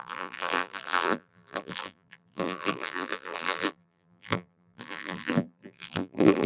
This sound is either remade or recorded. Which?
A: remade